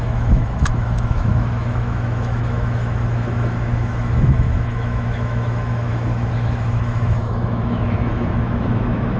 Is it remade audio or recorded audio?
remade